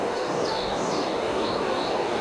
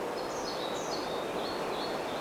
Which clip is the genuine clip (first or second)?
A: second